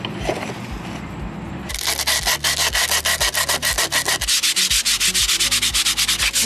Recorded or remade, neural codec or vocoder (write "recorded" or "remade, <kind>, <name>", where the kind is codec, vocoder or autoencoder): recorded